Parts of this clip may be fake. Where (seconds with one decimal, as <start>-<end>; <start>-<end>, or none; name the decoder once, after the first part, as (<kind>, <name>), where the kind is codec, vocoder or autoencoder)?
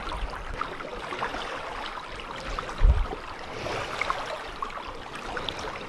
none